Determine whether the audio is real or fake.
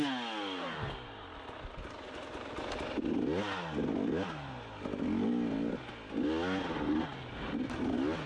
real